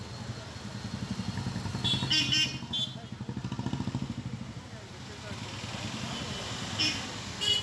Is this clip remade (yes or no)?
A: no